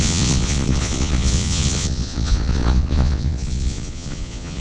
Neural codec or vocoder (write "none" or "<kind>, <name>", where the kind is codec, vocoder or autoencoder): vocoder, Vocos